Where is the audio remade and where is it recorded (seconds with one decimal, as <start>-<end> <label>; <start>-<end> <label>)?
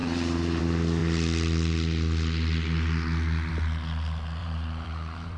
0.0-0.6 remade; 0.6-4.4 recorded; 4.4-5.4 remade